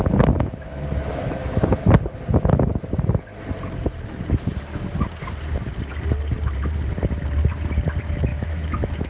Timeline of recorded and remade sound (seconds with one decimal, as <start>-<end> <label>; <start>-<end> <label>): 0.0-1.1 recorded; 1.1-1.8 remade; 1.8-8.3 recorded; 8.3-9.1 remade